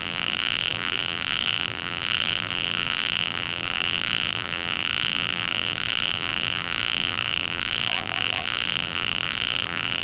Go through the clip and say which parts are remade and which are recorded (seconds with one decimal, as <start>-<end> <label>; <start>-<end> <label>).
0.0-10.0 remade